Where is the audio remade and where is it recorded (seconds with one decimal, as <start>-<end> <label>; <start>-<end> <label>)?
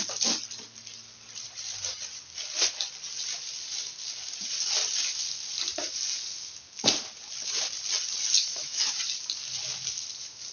0.0-8.4 recorded; 8.4-9.0 remade; 9.0-10.5 recorded